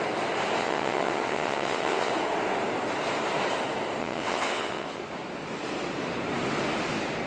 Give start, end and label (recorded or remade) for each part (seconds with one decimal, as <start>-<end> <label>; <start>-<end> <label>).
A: 0.0-0.6 recorded; 0.6-2.1 remade; 2.1-4.0 recorded; 4.0-5.0 remade; 5.0-7.3 recorded